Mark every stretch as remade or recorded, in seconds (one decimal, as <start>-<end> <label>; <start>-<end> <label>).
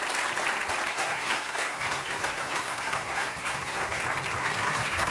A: 0.0-0.9 recorded; 0.9-4.0 remade; 4.0-4.4 recorded; 4.4-5.1 remade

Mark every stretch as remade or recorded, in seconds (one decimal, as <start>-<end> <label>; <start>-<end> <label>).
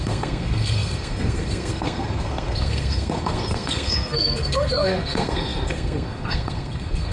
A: 0.0-7.1 remade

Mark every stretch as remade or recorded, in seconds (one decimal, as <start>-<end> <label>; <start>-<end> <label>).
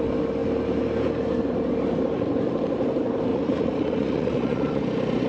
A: 0.0-3.3 recorded; 3.3-4.8 remade; 4.8-5.3 recorded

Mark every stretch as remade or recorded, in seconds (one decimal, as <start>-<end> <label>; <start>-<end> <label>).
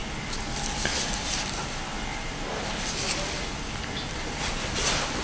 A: 0.0-5.2 recorded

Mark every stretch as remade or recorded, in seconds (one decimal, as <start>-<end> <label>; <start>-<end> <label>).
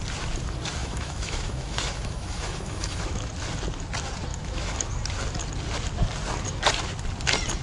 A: 0.0-0.8 recorded; 0.8-3.3 remade; 3.3-4.3 recorded; 4.3-4.9 remade; 4.9-7.6 recorded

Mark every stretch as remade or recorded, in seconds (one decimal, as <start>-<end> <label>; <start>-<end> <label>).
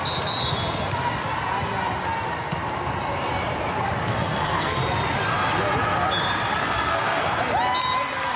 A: 0.0-4.1 recorded; 4.1-4.8 remade; 4.8-6.6 recorded; 6.6-7.4 remade; 7.4-8.4 recorded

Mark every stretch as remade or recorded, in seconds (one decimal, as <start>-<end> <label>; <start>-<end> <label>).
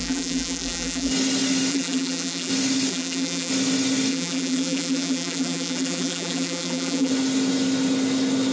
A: 0.0-1.1 remade; 1.1-1.7 recorded; 1.7-2.5 remade; 2.5-2.9 recorded; 2.9-3.5 remade; 3.5-4.1 recorded; 4.1-7.1 remade; 7.1-8.5 recorded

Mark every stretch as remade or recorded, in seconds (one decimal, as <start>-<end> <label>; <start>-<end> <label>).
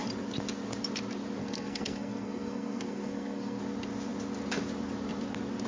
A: 0.0-1.4 recorded; 1.4-3.6 remade; 3.6-5.7 recorded